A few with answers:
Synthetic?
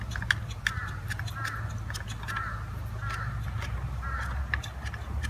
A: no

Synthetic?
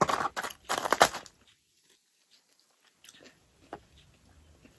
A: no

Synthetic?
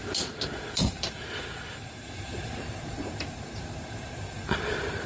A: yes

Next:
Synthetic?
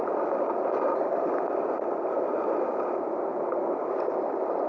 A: yes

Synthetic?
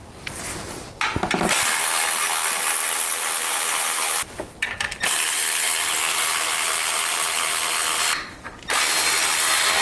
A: no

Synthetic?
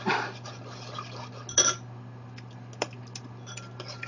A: no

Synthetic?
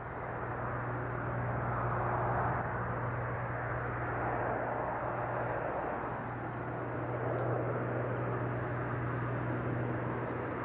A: no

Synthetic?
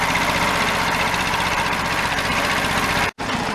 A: yes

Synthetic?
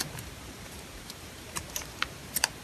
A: yes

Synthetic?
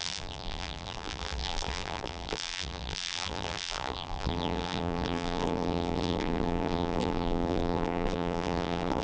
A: yes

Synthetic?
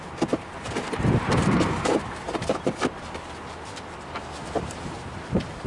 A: yes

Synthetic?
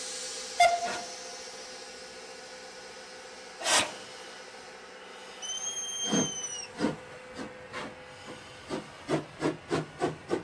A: no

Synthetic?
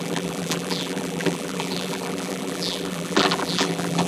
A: yes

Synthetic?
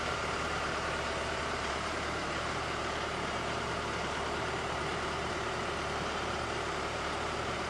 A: yes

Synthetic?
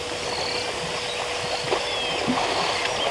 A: no